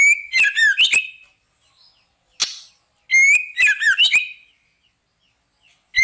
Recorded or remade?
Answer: recorded